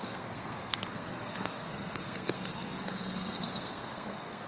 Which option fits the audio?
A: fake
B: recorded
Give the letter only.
A